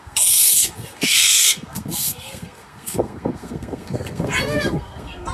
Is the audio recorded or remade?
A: remade